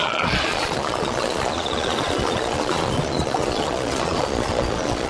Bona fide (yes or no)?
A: no